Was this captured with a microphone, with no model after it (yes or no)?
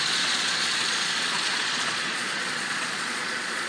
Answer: no